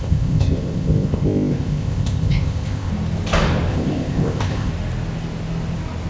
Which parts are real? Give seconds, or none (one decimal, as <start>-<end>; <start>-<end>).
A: 2.9-3.7; 4.7-6.1